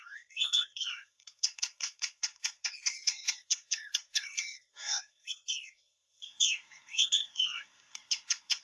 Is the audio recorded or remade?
remade